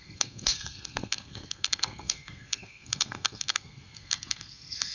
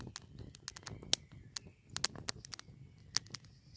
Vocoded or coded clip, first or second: first